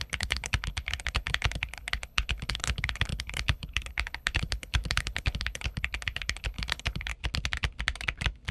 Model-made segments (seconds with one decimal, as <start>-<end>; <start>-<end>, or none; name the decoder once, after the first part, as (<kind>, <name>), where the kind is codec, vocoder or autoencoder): 0.0-7.1 (codec, HILCodec)